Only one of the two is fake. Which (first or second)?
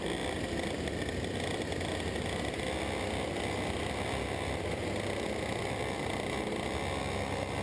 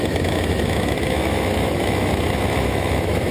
second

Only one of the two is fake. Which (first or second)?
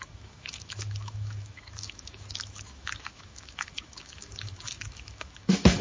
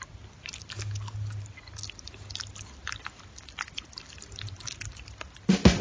first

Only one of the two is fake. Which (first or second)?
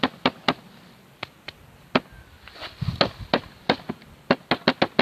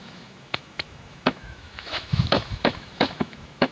second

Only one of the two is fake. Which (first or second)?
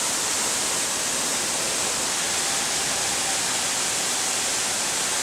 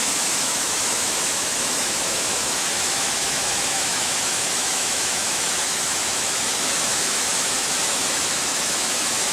second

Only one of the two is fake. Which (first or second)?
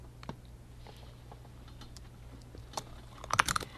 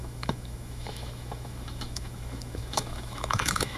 second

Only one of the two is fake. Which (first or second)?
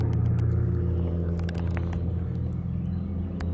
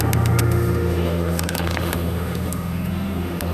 second